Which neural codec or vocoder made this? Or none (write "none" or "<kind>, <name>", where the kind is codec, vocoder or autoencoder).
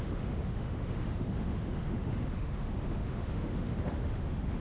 autoencoder, DAC-VAE